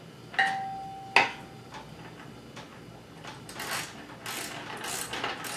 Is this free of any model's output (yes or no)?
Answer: yes